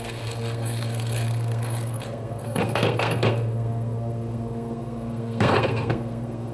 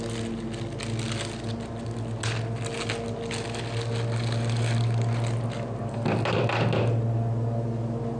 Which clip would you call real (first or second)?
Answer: second